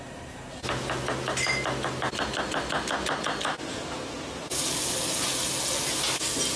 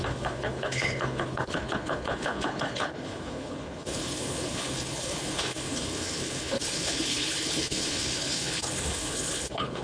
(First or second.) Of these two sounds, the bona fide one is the first